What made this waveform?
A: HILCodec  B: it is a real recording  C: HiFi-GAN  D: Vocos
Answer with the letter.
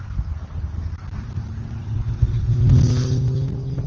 B